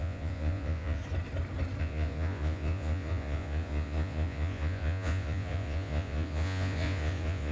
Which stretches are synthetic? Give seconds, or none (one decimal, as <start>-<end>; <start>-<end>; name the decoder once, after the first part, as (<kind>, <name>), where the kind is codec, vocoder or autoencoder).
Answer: 0.0-1.0 (vocoder, Vocos); 1.8-7.5